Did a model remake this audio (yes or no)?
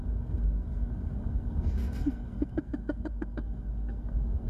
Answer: yes